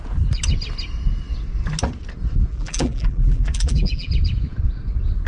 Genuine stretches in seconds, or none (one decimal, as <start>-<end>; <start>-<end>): 0.0-2.5; 4.1-5.3